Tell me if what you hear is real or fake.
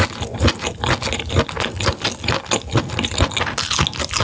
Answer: real